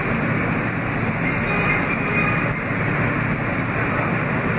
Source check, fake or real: real